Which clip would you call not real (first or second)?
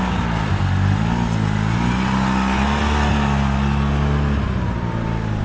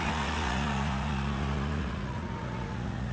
second